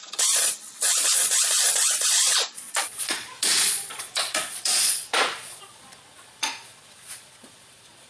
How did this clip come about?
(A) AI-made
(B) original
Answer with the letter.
A